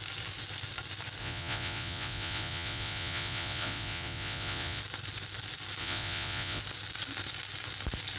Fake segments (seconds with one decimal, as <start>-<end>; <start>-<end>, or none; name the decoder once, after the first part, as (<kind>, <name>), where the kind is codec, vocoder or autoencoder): 1.2-4.8 (vocoder, Vocos); 5.8-6.6